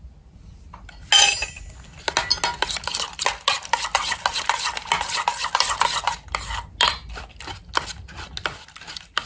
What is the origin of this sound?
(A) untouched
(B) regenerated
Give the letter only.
A